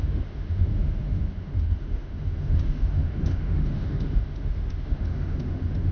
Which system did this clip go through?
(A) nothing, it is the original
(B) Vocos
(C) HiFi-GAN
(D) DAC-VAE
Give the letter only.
D